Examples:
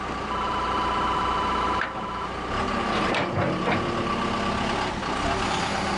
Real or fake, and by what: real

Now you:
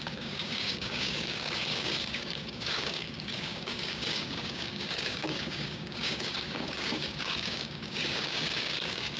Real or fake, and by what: fake, codec, DAC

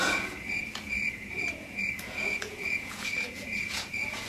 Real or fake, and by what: fake, vocoder, Vocos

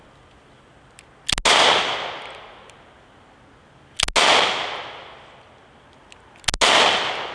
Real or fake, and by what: real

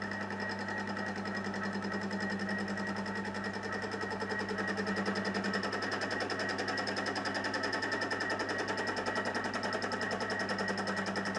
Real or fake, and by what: real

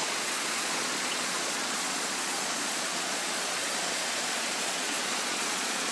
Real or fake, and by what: fake, vocoder, Vocos